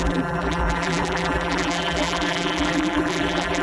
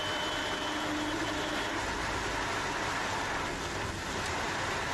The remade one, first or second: first